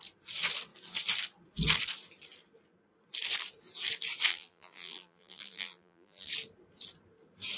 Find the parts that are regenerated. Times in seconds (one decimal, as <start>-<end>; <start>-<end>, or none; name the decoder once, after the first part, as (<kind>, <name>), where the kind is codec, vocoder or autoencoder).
4.3-6.3 (vocoder, BigVGAN v2)